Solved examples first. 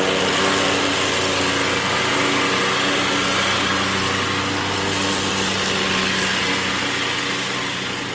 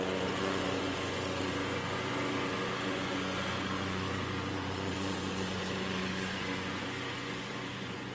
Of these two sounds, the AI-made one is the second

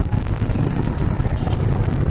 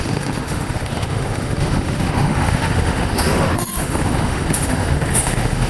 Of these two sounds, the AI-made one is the second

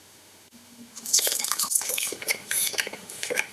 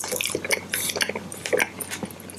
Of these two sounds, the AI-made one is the first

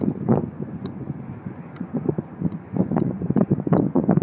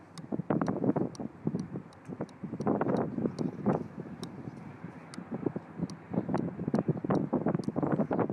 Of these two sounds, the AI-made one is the first